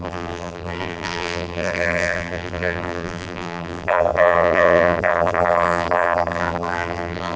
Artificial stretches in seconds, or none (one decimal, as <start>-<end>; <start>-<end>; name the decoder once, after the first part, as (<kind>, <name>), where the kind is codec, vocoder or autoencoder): 0.0-7.4 (vocoder, BigVGAN v2)